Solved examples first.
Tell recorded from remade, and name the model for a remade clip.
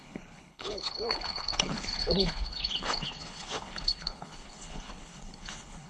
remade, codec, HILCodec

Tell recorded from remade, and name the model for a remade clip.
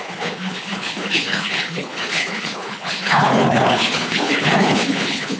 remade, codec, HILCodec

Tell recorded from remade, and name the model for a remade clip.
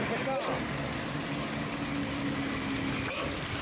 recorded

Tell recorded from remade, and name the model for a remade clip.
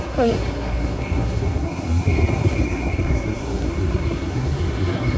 remade, codec, SNAC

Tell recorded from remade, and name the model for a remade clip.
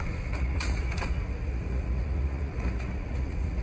remade, vocoder, Vocos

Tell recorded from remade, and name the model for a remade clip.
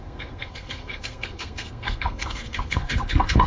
remade, codec, SNAC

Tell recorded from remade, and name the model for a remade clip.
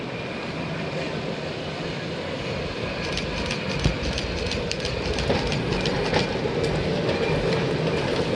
recorded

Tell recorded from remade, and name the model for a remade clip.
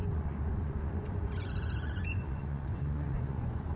remade, vocoder, Vocos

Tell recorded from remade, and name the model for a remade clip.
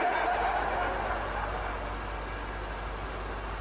recorded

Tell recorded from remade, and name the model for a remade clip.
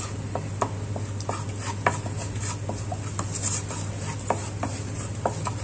recorded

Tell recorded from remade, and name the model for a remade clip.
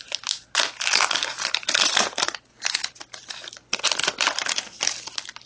recorded